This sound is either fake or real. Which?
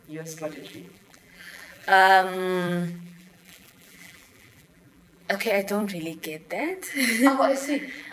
fake